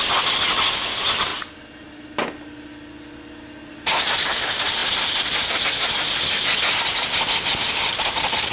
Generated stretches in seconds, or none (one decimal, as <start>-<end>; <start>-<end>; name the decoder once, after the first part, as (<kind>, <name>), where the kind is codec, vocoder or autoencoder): none